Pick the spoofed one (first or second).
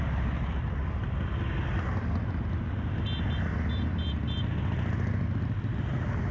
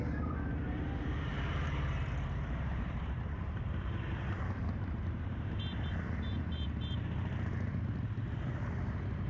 second